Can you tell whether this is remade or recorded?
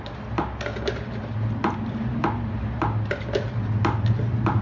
recorded